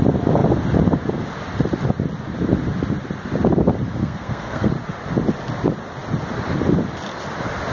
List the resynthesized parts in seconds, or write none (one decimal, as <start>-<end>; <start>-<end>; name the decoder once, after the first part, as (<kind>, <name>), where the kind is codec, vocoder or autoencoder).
4.0-4.7 (codec, SNAC)